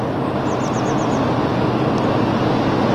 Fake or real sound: real